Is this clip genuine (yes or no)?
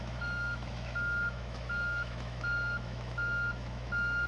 no